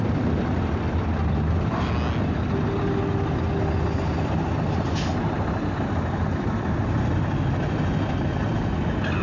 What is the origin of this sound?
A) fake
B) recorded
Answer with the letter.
B